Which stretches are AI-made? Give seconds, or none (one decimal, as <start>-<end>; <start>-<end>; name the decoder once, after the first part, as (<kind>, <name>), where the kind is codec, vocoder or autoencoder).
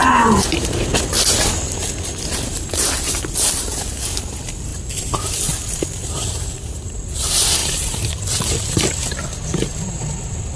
0.0-0.8 (vocoder, BigVGAN v2); 6.0-7.1; 7.6-8.1